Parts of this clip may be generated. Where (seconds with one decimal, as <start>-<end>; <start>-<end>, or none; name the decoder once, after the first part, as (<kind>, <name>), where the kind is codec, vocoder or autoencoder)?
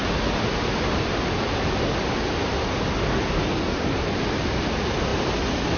none